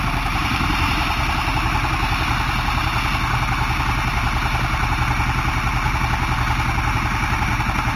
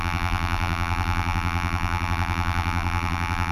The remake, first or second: second